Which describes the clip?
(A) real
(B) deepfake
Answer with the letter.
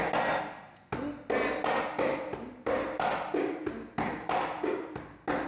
A